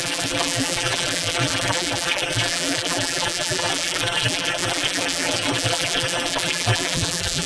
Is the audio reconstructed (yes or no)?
yes